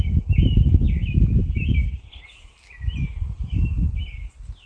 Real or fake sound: real